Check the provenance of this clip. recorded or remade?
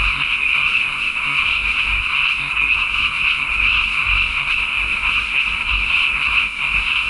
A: remade